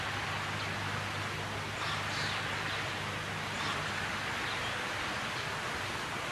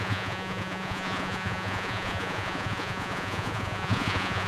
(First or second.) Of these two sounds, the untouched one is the first